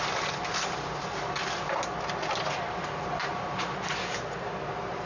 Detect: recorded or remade recorded